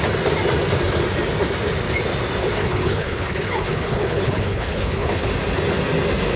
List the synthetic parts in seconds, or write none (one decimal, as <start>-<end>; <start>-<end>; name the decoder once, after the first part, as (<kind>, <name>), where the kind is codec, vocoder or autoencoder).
2.6-5.3 (codec, HILCodec)